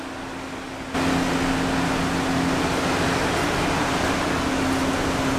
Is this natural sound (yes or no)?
yes